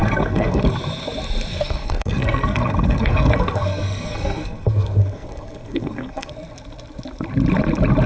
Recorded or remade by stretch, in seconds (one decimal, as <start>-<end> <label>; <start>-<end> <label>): 0.0-0.6 remade; 0.6-1.5 recorded; 1.5-6.3 remade; 6.3-8.1 recorded